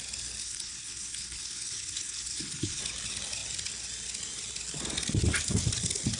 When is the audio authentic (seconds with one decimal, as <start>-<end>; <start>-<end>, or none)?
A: 0.0-0.4; 2.8-6.2